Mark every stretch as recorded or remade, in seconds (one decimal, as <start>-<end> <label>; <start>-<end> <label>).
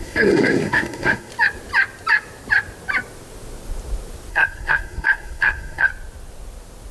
0.0-1.3 remade; 1.3-4.3 recorded; 4.3-5.9 remade; 5.9-6.9 recorded